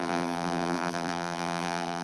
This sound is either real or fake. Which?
fake